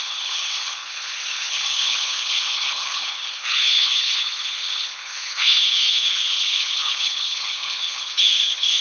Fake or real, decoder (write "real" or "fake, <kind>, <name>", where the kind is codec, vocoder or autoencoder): fake, codec, HILCodec